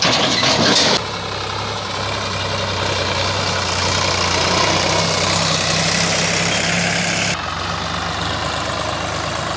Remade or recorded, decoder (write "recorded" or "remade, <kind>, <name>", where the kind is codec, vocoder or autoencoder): recorded